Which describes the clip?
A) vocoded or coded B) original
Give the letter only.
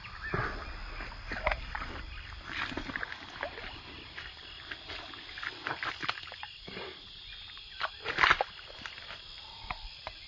B